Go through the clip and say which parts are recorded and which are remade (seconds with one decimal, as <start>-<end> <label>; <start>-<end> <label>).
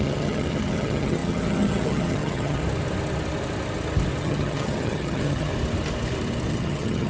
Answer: 0.0-2.6 remade; 2.6-4.2 recorded; 4.2-5.5 remade; 5.5-6.5 recorded; 6.5-7.1 remade